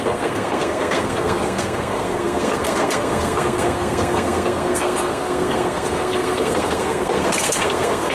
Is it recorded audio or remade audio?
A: remade